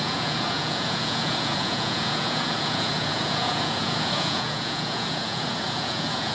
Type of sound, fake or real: fake